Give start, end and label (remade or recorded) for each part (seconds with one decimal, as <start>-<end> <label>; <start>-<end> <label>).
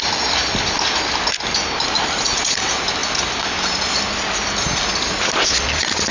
0.0-6.1 recorded